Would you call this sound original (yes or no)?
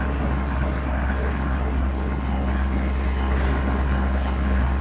no